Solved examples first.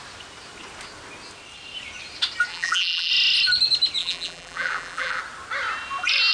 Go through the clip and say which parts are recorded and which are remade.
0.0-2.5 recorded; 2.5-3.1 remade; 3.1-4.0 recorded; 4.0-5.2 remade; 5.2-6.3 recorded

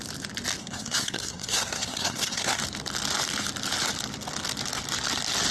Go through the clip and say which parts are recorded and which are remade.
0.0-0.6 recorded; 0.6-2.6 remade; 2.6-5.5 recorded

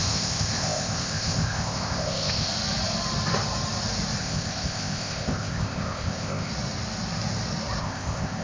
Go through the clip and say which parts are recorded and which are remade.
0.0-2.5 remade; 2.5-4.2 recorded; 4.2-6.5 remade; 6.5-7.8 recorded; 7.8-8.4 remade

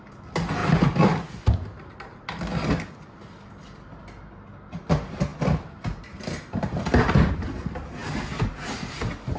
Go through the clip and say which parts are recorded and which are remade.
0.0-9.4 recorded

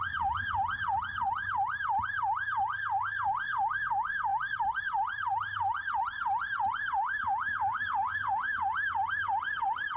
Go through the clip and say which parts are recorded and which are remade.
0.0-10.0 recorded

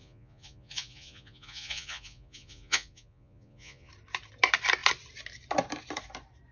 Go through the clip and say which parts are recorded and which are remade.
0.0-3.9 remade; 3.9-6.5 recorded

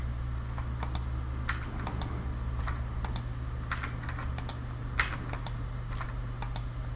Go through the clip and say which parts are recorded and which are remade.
0.0-7.0 recorded